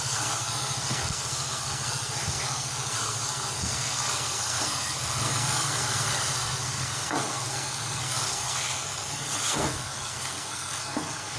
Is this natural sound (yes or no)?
no